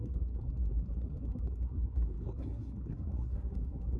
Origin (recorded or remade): remade